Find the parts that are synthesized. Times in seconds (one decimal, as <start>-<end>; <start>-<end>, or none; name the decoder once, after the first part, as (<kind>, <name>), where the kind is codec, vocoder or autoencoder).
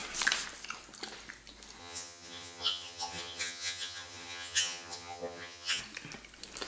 1.8-5.8 (vocoder, HiFi-GAN)